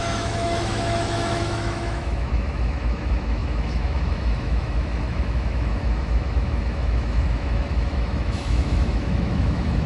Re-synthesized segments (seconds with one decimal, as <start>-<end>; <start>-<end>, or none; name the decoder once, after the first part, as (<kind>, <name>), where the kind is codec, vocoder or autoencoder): 0.0-9.9 (autoencoder, DAC-VAE)